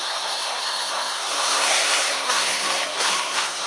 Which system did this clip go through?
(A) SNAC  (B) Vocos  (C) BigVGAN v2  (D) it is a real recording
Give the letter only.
A